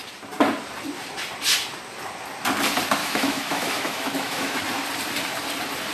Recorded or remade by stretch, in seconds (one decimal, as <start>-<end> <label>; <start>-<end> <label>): 0.0-3.0 recorded; 3.0-4.6 remade; 4.6-5.9 recorded